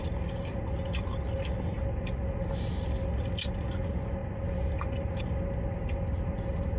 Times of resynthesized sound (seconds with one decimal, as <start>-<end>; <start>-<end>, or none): none

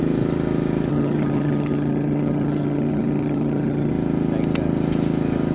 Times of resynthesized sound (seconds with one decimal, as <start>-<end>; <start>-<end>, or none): 0.9-3.9

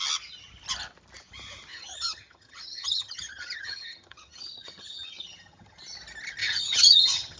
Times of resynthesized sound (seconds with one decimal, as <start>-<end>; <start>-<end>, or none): 1.7-5.8; 6.4-7.4

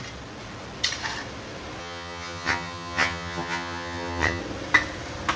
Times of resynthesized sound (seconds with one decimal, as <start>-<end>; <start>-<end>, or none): 1.8-4.4